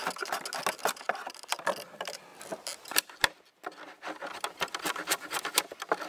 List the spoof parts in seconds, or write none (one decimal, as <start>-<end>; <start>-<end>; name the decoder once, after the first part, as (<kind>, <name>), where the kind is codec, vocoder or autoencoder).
none